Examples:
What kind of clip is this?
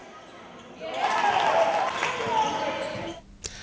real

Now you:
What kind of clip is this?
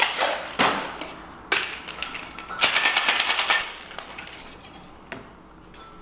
real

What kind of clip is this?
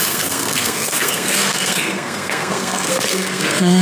fake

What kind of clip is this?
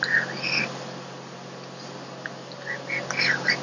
real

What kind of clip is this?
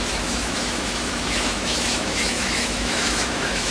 fake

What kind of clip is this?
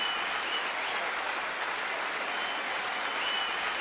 real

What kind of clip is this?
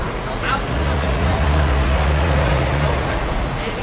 fake